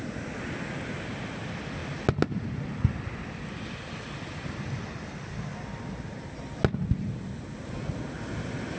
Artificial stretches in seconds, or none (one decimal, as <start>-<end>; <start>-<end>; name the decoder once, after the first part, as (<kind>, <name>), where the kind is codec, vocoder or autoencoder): none